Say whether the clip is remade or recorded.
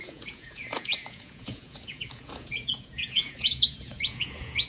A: remade